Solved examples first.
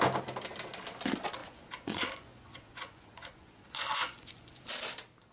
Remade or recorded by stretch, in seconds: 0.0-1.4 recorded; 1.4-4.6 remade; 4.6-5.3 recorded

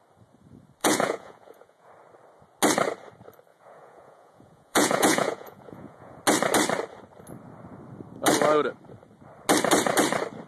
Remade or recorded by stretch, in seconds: 0.0-0.8 recorded; 0.8-1.9 remade; 1.9-3.5 recorded; 3.5-6.2 remade; 6.2-10.5 recorded